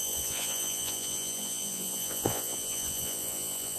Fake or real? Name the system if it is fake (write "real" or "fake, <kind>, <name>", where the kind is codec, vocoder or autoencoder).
fake, vocoder, Vocos